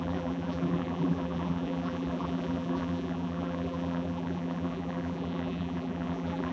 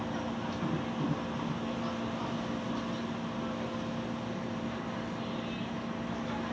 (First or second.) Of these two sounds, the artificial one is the first